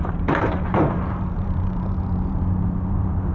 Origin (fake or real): fake